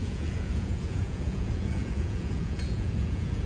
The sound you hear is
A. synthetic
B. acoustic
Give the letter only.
A